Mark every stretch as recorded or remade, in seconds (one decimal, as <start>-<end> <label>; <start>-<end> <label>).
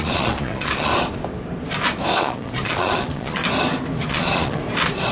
0.0-0.9 remade; 0.9-2.2 recorded; 2.2-3.4 remade; 3.4-4.1 recorded; 4.1-4.6 remade; 4.6-5.1 recorded